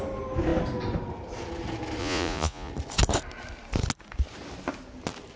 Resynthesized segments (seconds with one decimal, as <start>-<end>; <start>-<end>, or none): 2.0-2.7